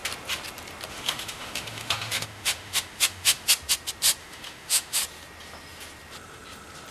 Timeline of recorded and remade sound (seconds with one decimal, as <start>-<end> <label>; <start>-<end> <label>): 0.0-0.9 recorded; 0.9-3.5 remade; 3.5-4.2 recorded; 4.2-5.0 remade; 5.0-6.9 recorded